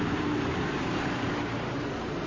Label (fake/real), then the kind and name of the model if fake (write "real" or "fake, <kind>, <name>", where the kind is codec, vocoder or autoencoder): fake, vocoder, BigVGAN v2